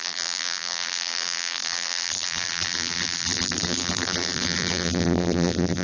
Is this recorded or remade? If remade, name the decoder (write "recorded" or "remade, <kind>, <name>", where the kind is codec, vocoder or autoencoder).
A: remade, vocoder, BigVGAN v2